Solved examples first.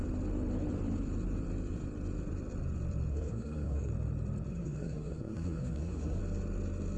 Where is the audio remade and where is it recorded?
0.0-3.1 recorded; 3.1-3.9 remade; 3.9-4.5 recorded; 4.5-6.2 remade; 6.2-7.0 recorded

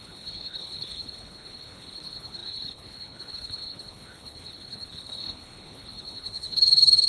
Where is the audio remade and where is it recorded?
0.0-7.1 remade